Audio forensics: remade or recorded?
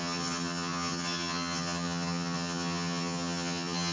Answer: remade